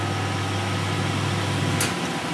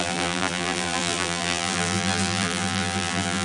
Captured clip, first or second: first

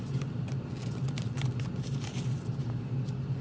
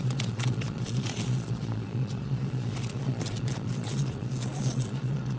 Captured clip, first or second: first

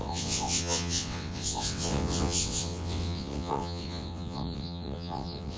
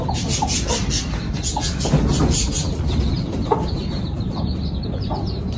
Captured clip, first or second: second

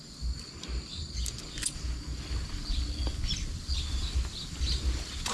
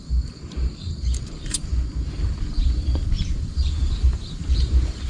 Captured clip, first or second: first